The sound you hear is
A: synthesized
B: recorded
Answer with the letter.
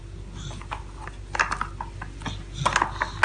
B